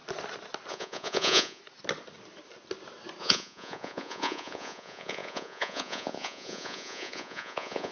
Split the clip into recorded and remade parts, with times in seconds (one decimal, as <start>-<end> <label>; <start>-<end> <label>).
0.0-0.7 recorded; 0.7-1.6 remade; 1.6-3.2 recorded; 3.2-7.9 remade